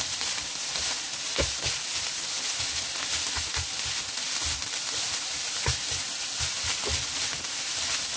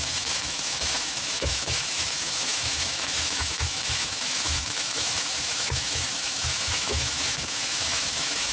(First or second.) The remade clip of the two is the second